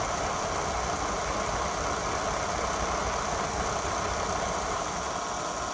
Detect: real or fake real